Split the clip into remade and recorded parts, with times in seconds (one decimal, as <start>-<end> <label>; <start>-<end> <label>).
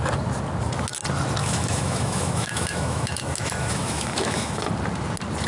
0.0-1.4 recorded; 1.4-4.7 remade; 4.7-5.5 recorded